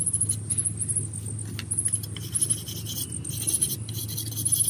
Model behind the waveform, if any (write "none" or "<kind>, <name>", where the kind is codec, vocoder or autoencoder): none